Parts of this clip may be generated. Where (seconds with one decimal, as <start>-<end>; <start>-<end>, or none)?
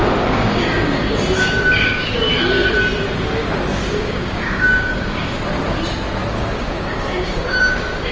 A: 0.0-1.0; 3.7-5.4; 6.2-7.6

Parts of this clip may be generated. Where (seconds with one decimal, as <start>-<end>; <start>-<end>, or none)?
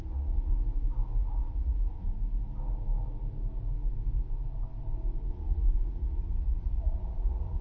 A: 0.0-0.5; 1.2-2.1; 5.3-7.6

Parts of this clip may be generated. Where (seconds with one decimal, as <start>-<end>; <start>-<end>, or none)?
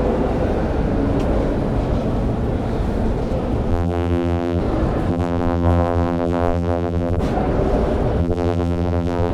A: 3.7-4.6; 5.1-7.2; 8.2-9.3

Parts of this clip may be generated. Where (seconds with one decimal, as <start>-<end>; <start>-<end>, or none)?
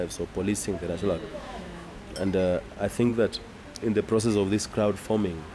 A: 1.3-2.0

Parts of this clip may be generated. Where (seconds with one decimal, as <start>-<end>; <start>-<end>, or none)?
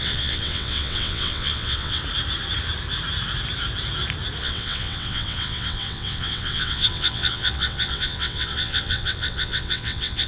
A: 0.0-2.0; 4.4-10.3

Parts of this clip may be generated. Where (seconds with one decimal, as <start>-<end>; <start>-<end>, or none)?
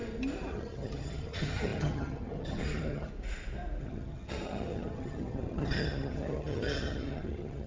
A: 0.5-3.1; 3.8-7.7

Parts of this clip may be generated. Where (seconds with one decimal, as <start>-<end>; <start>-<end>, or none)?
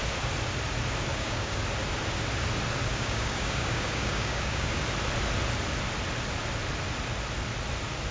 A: 1.1-1.6; 2.9-4.8